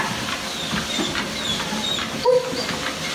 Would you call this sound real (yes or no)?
yes